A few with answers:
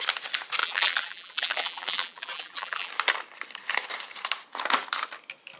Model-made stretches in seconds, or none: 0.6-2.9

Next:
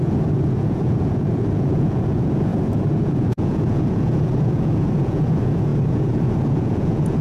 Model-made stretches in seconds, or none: 0.0-7.2

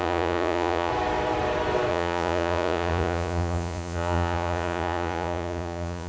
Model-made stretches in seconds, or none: 0.0-0.9; 1.9-6.1

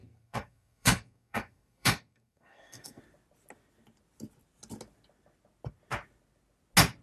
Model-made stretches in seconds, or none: 0.0-3.0

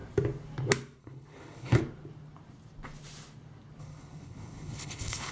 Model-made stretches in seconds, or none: 1.0-1.8; 3.8-5.3

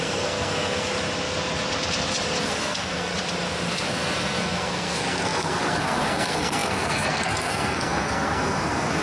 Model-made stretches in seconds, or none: 0.0-0.9; 2.4-3.1; 3.7-9.0

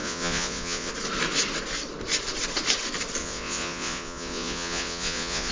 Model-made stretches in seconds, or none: 0.0-0.9; 3.2-5.5